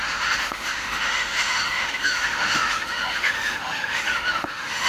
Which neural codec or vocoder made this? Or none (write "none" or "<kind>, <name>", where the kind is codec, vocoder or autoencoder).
autoencoder, DAC-VAE